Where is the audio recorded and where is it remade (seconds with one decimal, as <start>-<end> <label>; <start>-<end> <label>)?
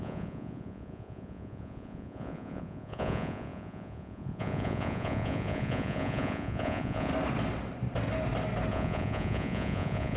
0.0-7.1 remade; 7.1-8.7 recorded; 8.7-10.2 remade